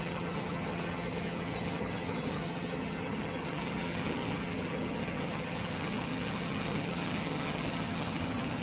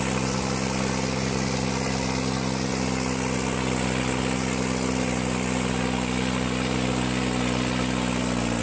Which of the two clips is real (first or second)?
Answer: second